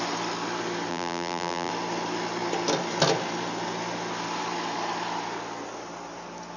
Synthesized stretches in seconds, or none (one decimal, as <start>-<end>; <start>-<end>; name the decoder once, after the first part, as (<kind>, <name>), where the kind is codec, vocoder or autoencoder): 0.9-1.7 (vocoder, BigVGAN v2)